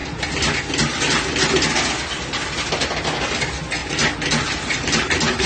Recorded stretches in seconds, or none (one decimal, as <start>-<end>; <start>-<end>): 0.0-5.5